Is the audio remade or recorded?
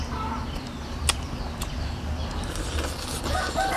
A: recorded